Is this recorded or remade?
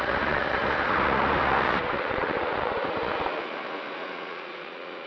remade